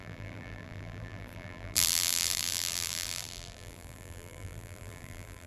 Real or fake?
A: fake